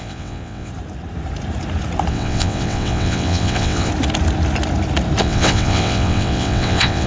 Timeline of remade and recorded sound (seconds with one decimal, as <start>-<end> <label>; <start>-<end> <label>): 0.0-0.7 remade; 0.7-2.1 recorded; 2.1-3.9 remade; 3.9-5.2 recorded; 5.2-7.1 remade